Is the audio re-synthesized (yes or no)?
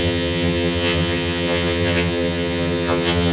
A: yes